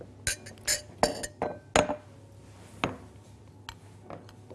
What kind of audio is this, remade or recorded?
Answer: recorded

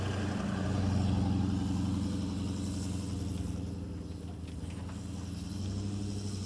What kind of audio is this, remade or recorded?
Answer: recorded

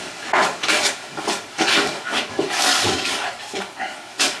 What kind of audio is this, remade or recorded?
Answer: remade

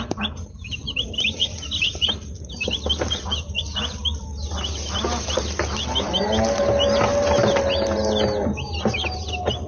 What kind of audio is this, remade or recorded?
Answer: recorded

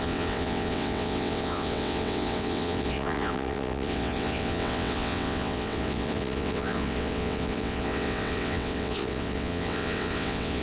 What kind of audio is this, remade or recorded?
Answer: remade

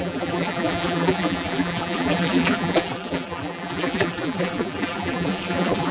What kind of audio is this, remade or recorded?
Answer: remade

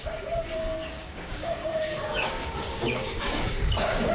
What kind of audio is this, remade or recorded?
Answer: remade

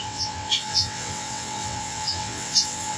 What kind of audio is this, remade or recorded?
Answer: remade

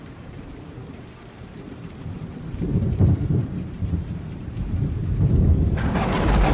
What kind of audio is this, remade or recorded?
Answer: remade